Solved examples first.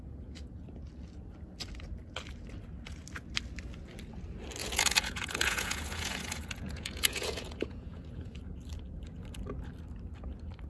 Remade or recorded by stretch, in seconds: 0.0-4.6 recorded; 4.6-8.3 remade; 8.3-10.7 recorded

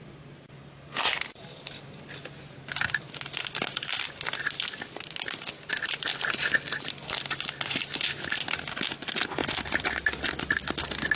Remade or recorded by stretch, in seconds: 0.0-11.2 recorded

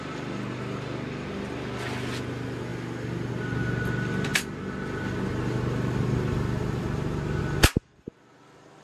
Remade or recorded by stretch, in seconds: 0.0-8.8 recorded

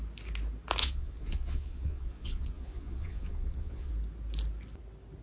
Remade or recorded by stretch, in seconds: 0.0-0.8 recorded; 0.8-3.9 remade; 3.9-5.2 recorded

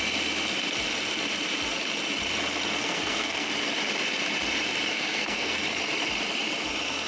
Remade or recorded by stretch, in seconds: 0.0-2.8 recorded; 2.8-3.5 remade; 3.5-4.9 recorded; 4.9-5.6 remade; 5.6-7.1 recorded